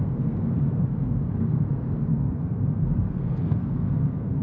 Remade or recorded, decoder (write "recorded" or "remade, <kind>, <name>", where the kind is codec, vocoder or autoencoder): remade, codec, SNAC